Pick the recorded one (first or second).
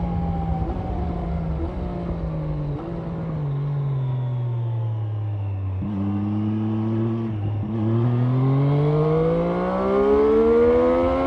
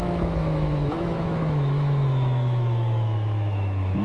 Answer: first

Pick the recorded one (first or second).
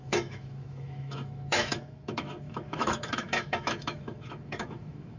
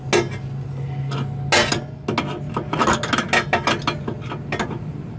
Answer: second